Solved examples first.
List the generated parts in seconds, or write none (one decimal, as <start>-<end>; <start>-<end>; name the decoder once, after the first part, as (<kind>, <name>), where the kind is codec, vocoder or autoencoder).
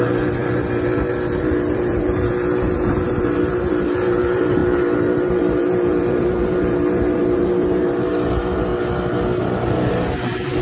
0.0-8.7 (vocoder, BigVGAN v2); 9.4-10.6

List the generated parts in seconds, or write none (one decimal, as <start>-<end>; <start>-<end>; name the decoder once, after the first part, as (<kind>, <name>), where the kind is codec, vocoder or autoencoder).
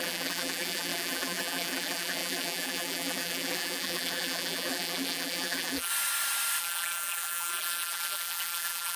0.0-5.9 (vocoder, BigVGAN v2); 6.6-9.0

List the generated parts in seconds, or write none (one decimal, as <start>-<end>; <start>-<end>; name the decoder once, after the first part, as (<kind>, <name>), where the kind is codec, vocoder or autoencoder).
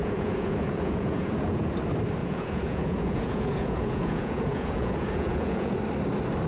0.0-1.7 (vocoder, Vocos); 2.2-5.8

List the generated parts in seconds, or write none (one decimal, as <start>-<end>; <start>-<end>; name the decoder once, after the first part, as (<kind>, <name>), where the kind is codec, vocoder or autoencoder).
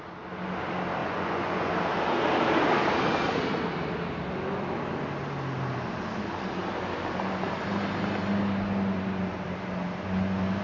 1.0-1.7 (vocoder, Vocos)